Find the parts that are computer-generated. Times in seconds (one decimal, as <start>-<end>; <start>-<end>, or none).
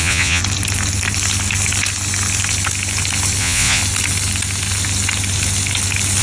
0.0-0.4; 3.4-3.8